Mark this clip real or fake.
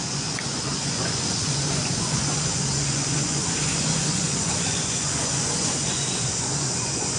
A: fake